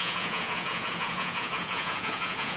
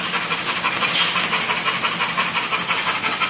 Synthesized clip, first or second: first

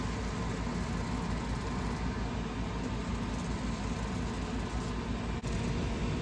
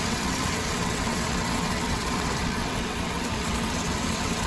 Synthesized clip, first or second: second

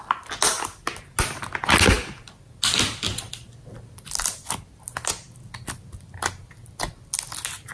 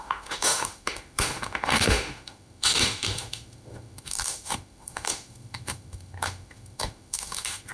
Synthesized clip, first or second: second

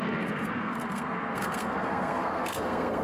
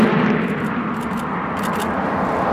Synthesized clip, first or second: first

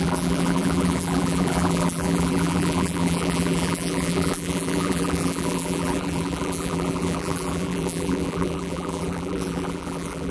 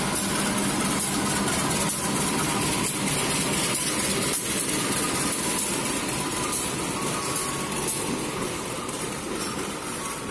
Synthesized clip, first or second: first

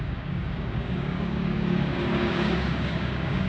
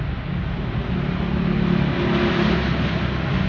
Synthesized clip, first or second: first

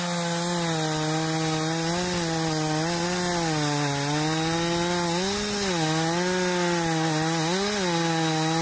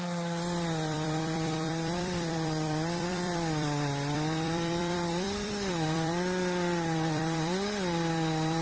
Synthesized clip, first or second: second